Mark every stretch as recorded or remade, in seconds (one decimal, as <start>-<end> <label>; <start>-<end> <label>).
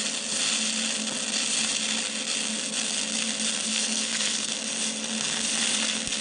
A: 0.0-3.7 recorded; 3.7-4.5 remade; 4.5-6.2 recorded